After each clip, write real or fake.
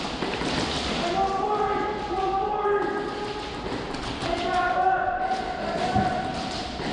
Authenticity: real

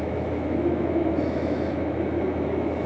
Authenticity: fake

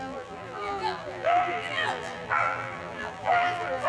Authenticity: fake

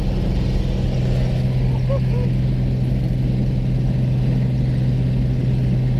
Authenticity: real